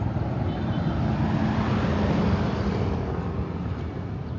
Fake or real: real